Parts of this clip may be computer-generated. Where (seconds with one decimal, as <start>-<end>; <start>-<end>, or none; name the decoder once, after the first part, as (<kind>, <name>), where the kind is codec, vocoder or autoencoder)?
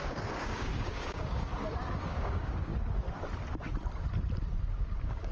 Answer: 0.0-1.5 (codec, DAC); 2.0-2.7; 4.7-5.3